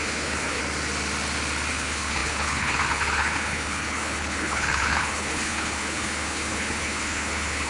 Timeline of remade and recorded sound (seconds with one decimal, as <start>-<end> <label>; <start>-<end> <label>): 0.0-0.6 remade; 0.6-1.7 recorded; 1.7-7.7 remade